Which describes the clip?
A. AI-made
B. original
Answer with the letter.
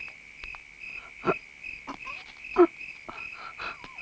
B